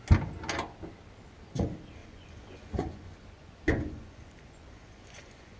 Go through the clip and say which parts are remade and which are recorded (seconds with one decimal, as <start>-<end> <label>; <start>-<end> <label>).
0.0-2.0 recorded; 2.0-5.6 remade